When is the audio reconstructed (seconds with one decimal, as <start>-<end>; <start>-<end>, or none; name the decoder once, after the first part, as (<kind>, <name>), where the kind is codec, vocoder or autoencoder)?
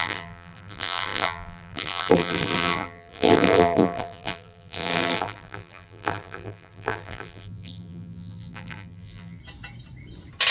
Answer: 0.0-9.4 (vocoder, BigVGAN v2)